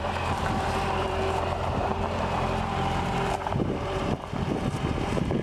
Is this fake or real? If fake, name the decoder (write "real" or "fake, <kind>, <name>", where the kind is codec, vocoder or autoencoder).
fake, vocoder, BigVGAN v2